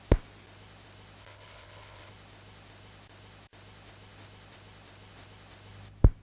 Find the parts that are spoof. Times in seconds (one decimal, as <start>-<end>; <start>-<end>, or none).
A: 1.2-2.1